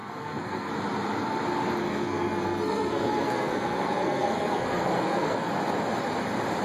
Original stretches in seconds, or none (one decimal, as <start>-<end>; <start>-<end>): 0.7-1.8; 5.5-6.6